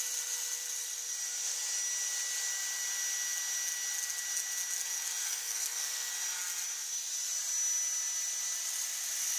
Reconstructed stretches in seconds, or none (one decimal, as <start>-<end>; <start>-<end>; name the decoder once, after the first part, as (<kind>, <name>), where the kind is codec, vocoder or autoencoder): 5.2-6.1 (codec, SNAC)

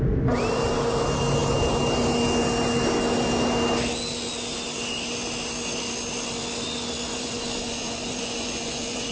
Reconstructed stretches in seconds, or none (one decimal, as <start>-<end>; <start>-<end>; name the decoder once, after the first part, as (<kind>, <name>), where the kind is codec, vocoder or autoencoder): 7.1-9.1 (vocoder, Vocos)

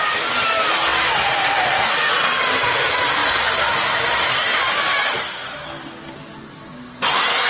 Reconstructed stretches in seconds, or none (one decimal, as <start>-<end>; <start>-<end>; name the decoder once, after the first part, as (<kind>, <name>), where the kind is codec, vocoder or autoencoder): none